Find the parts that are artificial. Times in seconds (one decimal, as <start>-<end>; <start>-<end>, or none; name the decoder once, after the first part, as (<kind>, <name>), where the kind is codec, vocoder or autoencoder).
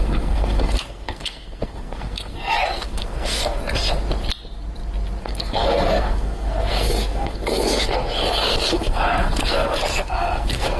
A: 0.0-3.6 (codec, SNAC); 5.2-10.8